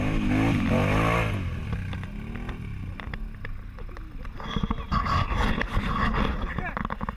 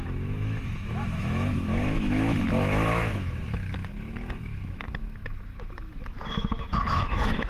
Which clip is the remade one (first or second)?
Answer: second